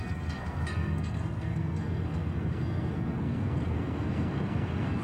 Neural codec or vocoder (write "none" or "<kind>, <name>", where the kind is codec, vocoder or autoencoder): codec, SNAC